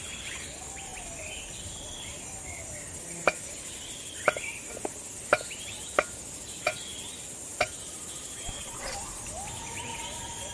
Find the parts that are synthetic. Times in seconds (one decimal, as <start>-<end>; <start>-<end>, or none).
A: none